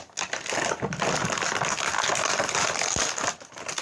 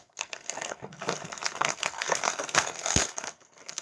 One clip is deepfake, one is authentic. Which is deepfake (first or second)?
second